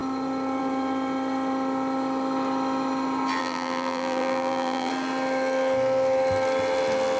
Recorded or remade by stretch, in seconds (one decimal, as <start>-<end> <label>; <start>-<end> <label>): 0.0-3.4 recorded; 3.4-4.9 remade; 4.9-7.2 recorded